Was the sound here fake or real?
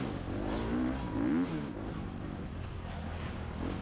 real